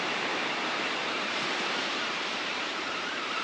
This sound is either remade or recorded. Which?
remade